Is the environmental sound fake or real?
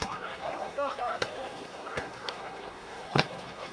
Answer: fake